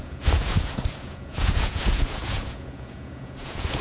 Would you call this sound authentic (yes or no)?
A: no